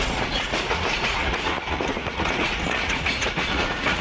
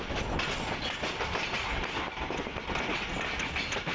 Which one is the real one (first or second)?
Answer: second